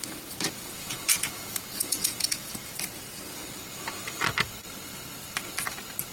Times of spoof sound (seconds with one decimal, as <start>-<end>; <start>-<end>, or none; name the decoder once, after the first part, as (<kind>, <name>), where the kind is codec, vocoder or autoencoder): 0.6-2.5 (vocoder, Vocos)